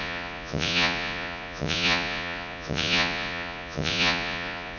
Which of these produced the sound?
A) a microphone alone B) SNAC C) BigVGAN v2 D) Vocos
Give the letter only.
D